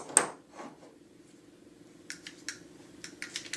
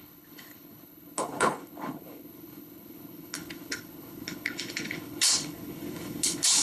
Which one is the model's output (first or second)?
second